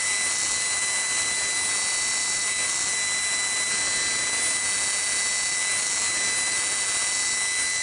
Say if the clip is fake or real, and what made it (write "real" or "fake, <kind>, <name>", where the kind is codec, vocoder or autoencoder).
real